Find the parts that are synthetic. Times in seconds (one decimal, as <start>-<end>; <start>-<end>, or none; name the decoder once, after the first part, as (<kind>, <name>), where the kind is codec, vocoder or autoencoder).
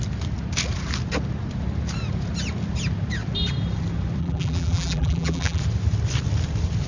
4.2-5.6 (vocoder, BigVGAN v2)